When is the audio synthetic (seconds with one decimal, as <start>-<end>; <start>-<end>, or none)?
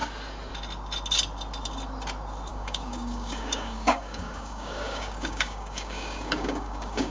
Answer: 2.5-7.1